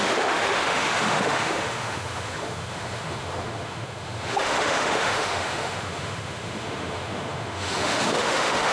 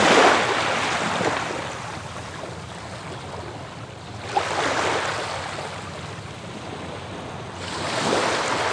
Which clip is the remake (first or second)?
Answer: first